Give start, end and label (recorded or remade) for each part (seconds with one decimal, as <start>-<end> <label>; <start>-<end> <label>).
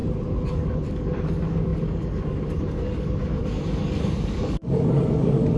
0.0-0.5 recorded; 0.5-5.6 remade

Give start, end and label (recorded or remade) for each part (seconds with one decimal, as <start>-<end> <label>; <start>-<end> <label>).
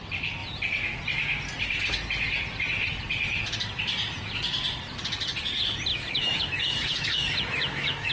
0.0-5.9 recorded; 5.9-8.1 remade